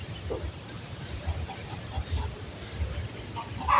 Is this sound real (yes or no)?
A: no